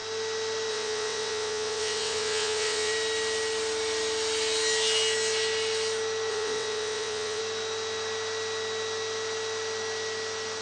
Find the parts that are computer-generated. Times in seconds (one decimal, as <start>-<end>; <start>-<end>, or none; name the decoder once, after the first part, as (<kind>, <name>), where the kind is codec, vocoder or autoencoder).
0.7-2.9 (vocoder, WaveNeXt); 6.3-7.4